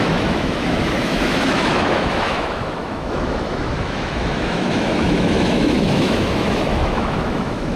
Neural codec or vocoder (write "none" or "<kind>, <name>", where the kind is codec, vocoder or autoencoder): autoencoder, DAC-VAE